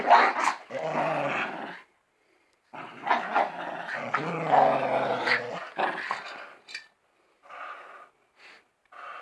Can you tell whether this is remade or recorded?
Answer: recorded